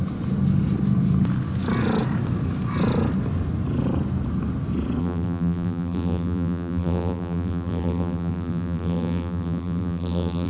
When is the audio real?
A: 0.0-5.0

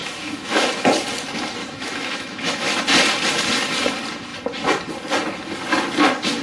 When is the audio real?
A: 0.9-1.6; 2.8-6.4

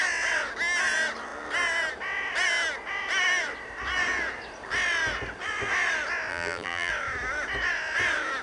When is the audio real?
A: 0.0-6.3; 6.9-8.4

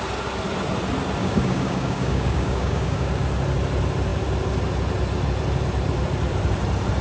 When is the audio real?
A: 0.0-1.2; 3.1-7.0